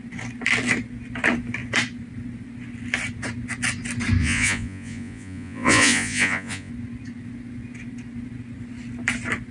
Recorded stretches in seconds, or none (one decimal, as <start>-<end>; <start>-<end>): 0.0-4.2; 6.7-9.5